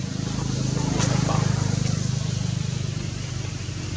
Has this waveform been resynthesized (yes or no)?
no